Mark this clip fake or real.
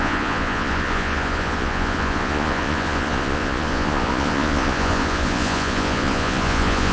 fake